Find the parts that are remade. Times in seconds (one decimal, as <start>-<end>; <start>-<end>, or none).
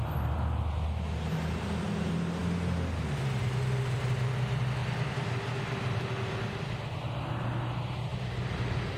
none